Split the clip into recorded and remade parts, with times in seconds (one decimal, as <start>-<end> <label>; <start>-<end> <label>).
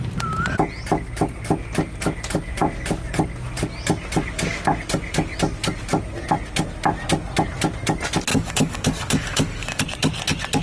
0.0-8.3 recorded; 8.3-9.8 remade; 9.8-10.6 recorded